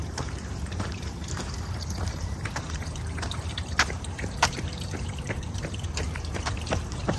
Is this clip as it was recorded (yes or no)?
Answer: no